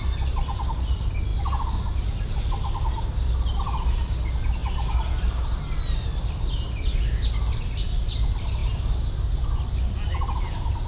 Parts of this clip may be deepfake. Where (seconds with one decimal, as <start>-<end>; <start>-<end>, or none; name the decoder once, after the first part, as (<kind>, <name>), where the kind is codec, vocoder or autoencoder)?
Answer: none